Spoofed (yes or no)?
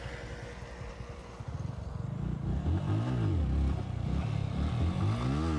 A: no